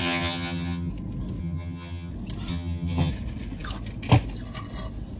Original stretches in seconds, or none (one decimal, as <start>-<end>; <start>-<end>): 0.9-1.4; 2.1-2.5; 3.1-5.2